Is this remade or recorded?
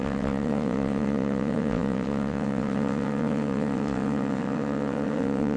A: remade